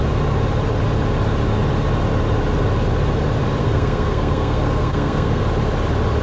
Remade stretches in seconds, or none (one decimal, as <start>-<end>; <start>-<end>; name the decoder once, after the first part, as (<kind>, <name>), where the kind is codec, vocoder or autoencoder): 3.6-5.4 (codec, SNAC)